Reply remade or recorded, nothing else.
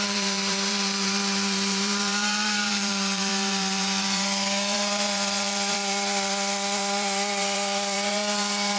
remade